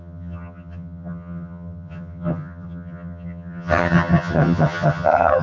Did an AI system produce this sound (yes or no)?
yes